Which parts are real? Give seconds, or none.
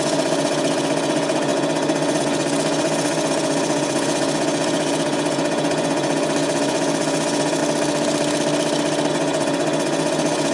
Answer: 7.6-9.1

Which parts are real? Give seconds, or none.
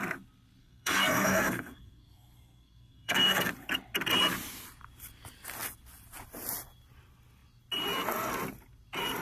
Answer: 0.0-0.6; 3.5-9.2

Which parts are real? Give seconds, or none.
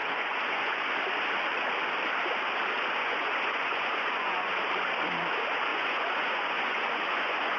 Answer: 0.9-3.0; 4.5-5.7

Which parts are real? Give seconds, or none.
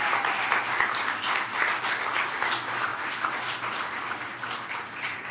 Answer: 0.0-5.3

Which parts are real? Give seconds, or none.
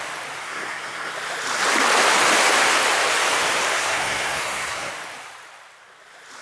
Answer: 0.0-0.4; 1.1-3.7; 4.9-6.4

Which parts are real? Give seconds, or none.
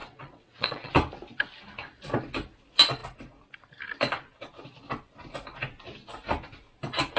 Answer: 0.9-7.2